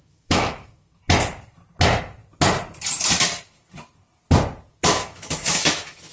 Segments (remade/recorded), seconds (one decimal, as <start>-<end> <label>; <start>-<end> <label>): 0.0-1.0 remade; 1.0-4.7 recorded; 4.7-6.1 remade